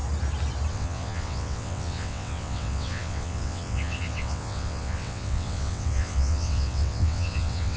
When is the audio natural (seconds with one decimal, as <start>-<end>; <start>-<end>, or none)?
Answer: 0.0-0.7